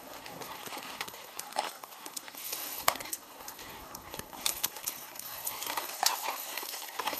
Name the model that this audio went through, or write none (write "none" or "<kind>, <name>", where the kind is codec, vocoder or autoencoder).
codec, SNAC